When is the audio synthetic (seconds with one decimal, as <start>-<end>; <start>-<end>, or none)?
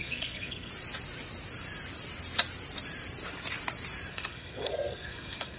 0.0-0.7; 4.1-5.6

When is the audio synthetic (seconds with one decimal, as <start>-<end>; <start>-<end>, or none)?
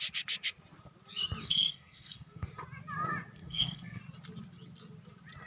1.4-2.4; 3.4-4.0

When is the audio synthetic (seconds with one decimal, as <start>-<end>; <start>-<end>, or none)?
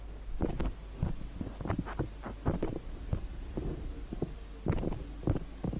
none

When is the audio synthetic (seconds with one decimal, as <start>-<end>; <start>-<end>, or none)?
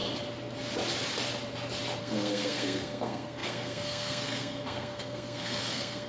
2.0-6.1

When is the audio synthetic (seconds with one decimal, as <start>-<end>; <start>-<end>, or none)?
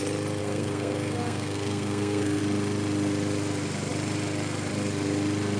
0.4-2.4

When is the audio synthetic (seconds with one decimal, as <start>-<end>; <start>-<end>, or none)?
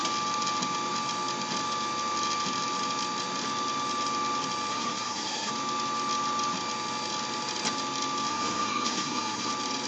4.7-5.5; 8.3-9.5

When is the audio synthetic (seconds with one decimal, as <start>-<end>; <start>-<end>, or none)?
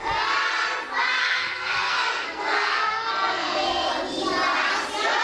1.2-3.9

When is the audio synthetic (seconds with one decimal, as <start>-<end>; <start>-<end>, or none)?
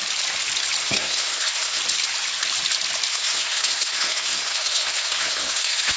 0.8-1.8; 3.1-6.0